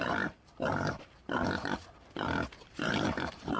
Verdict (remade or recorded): remade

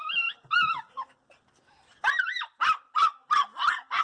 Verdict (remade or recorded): recorded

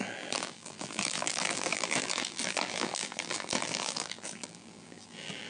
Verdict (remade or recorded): remade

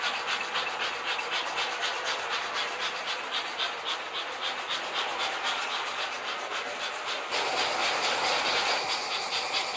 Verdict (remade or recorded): recorded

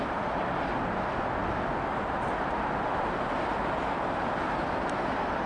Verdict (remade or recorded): recorded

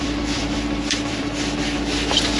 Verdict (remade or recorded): remade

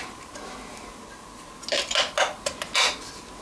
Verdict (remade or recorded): recorded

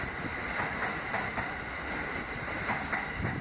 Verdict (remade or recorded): recorded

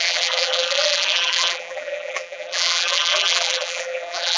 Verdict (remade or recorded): remade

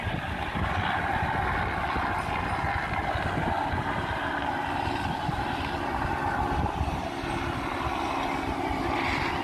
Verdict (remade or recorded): recorded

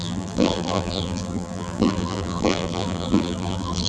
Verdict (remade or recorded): remade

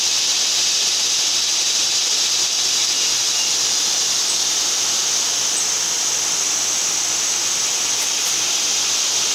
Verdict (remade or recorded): recorded